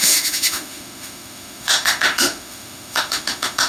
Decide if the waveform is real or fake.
fake